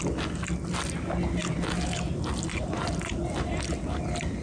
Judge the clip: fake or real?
real